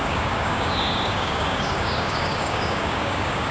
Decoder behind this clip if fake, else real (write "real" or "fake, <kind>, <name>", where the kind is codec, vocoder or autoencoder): fake, codec, DAC